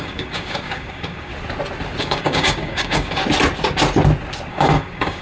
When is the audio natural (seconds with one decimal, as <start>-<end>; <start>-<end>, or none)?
1.3-2.0; 3.2-4.5

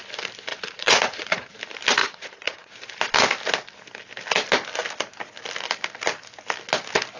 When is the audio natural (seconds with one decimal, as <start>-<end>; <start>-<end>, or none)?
0.0-0.5; 1.5-2.0; 2.7-7.2